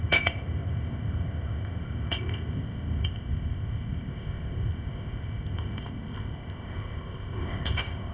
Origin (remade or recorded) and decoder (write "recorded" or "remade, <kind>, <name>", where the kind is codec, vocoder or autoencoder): remade, codec, ZipCodec